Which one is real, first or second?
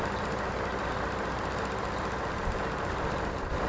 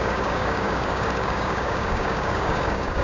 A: first